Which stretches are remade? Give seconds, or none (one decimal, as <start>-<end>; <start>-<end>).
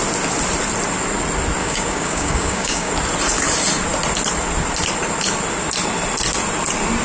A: 1.6-2.9